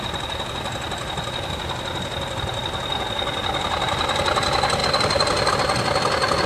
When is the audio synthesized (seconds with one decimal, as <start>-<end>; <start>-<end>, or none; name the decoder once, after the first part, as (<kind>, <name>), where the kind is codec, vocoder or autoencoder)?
4.8-5.5 (vocoder, BigVGAN v2)